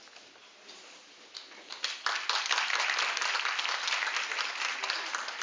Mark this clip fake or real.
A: real